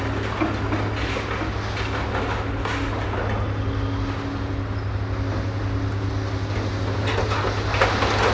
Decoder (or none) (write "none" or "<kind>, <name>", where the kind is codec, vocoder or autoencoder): none